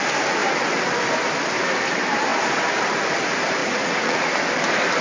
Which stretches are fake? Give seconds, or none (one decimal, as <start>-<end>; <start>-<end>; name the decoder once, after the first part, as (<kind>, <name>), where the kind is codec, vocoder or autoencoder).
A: 3.6-4.3 (vocoder, Vocos)